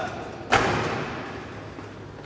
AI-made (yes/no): no